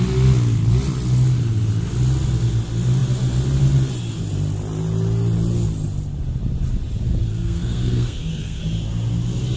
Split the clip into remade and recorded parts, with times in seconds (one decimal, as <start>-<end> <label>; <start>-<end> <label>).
0.0-7.3 recorded; 7.3-8.6 remade; 8.6-9.6 recorded